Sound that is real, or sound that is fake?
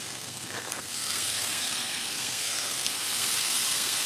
fake